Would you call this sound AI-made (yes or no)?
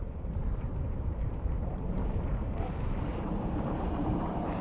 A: yes